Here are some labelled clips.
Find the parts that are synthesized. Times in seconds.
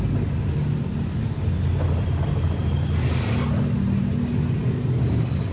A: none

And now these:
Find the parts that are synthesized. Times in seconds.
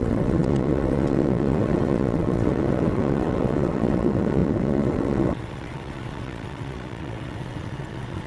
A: 0.0-8.3 (vocoder, WaveNeXt)